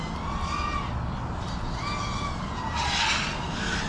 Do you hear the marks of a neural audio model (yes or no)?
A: no